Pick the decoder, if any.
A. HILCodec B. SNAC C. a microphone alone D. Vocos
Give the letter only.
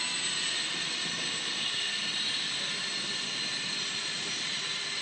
C